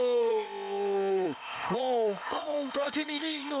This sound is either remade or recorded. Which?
remade